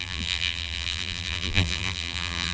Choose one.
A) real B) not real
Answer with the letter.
B